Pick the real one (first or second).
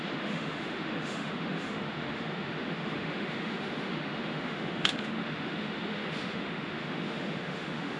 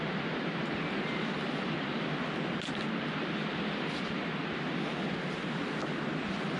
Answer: second